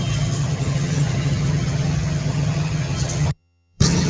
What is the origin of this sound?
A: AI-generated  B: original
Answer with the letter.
A